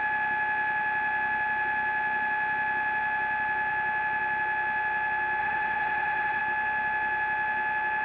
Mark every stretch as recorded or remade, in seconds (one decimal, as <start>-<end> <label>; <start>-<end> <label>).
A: 0.0-5.4 recorded; 5.4-6.4 remade; 6.4-8.0 recorded